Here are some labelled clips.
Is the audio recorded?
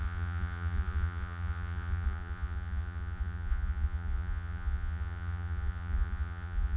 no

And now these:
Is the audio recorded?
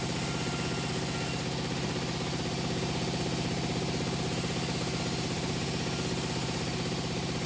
yes